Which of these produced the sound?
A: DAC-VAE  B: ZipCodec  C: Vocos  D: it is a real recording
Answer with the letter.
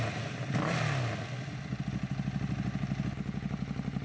D